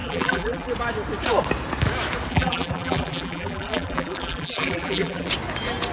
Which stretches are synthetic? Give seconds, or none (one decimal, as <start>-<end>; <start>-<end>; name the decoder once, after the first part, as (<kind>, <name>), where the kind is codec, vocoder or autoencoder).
0.0-0.7 (vocoder, BigVGAN v2); 2.3-5.3